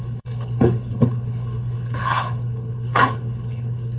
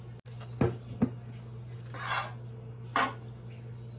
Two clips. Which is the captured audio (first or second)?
second